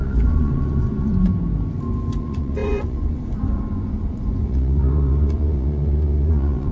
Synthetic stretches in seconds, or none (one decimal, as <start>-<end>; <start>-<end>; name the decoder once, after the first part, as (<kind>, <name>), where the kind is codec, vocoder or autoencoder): 0.0-1.3 (vocoder, Vocos); 2.2-6.7